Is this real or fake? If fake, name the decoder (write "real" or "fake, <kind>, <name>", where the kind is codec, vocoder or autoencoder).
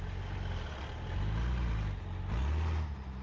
real